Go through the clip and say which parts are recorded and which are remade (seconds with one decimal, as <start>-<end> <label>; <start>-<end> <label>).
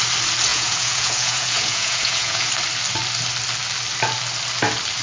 0.0-0.5 recorded; 0.5-2.5 remade; 2.5-5.0 recorded